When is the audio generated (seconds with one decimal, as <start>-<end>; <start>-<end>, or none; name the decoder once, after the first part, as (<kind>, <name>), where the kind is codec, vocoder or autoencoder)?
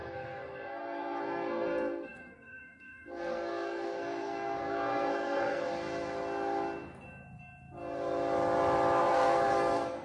0.0-5.7 (codec, SNAC); 9.0-10.0